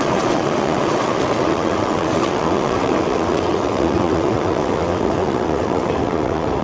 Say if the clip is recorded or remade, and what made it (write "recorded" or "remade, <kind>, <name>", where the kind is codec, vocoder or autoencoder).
remade, vocoder, WaveNeXt